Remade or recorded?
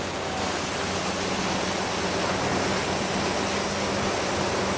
recorded